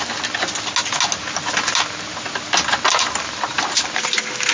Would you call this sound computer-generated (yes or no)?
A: no